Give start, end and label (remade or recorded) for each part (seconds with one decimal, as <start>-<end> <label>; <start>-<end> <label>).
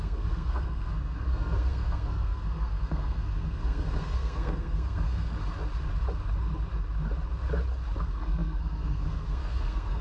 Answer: 0.0-5.3 remade; 5.3-8.0 recorded; 8.0-10.0 remade